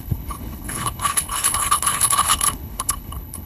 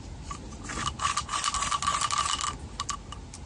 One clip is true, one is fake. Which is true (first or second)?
second